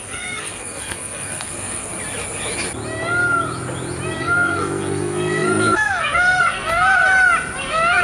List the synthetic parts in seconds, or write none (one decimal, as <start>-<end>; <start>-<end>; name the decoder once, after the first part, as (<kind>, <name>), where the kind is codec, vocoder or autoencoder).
0.0-1.9 (codec, SNAC); 4.2-7.0; 7.6-8.0